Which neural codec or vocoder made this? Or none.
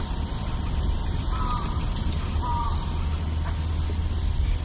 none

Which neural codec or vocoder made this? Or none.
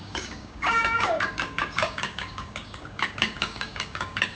codec, DAC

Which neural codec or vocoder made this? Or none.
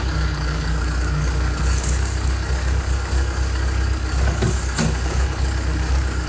codec, DAC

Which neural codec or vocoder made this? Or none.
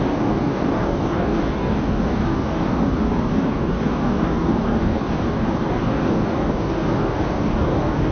codec, DAC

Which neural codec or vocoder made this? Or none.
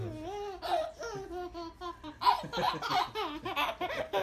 none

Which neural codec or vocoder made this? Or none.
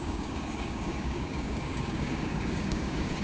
codec, DAC